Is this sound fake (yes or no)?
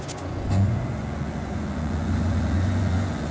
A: yes